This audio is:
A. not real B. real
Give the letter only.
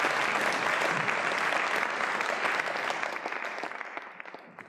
A